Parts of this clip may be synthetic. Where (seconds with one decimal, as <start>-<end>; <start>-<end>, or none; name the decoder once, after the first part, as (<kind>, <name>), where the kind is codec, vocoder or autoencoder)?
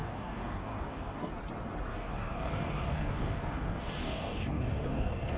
0.0-1.3 (codec, DAC); 1.9-5.4